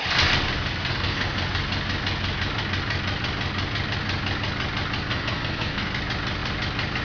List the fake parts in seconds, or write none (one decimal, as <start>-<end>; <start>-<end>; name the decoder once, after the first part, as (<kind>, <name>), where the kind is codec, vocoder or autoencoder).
0.9-1.4 (codec, SNAC); 5.1-6.0